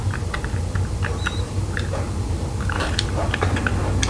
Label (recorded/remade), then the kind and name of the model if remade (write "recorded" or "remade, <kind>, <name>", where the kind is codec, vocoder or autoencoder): recorded